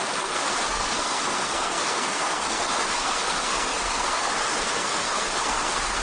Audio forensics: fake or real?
fake